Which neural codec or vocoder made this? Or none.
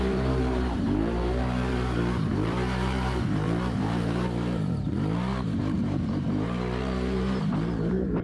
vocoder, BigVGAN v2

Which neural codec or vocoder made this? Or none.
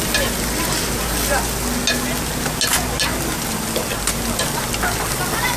none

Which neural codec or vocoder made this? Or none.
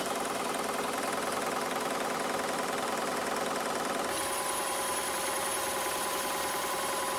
vocoder, BigVGAN v2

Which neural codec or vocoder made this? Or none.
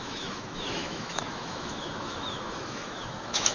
autoencoder, DAC-VAE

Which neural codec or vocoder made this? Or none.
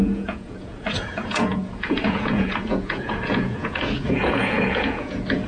vocoder, Vocos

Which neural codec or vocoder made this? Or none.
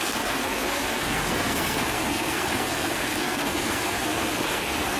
codec, SNAC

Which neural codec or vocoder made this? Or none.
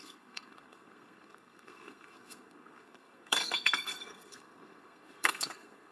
codec, SNAC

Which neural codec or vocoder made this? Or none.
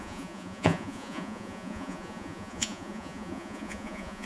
vocoder, Vocos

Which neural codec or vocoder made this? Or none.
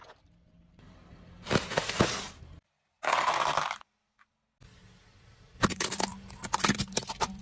none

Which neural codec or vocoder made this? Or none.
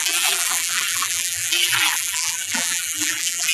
vocoder, BigVGAN v2